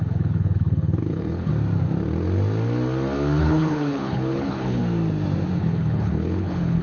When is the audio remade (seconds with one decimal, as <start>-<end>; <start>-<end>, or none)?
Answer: 0.0-1.5; 3.4-4.8; 5.6-6.8